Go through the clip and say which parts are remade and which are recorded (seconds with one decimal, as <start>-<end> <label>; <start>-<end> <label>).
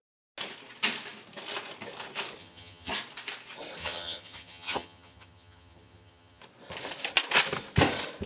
0.0-2.4 recorded; 2.4-2.9 remade; 2.9-3.8 recorded; 3.8-6.4 remade; 6.4-8.3 recorded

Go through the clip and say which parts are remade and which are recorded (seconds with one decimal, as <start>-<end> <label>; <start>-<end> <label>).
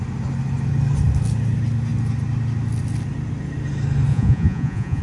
0.0-4.1 recorded; 4.1-5.0 remade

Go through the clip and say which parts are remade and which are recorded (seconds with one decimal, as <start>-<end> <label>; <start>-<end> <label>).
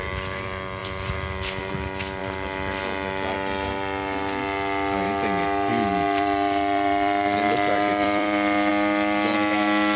0.0-2.2 recorded; 2.2-2.8 remade; 2.8-5.7 recorded; 5.7-8.7 remade; 8.7-10.0 recorded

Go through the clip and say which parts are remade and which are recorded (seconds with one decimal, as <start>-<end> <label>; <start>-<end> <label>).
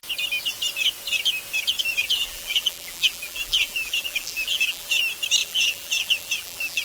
0.0-2.0 recorded; 2.0-5.0 remade; 5.0-5.4 recorded; 5.4-6.8 remade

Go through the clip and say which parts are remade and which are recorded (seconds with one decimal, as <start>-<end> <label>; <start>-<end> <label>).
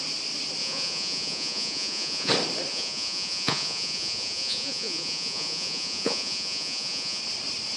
0.0-0.6 recorded; 0.6-2.3 remade; 2.3-2.7 recorded; 2.7-7.2 remade; 7.2-7.8 recorded